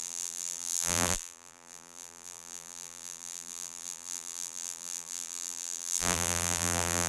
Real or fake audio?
fake